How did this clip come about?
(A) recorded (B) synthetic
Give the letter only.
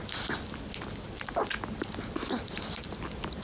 A